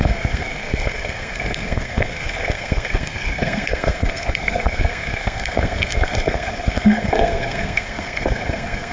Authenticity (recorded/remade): remade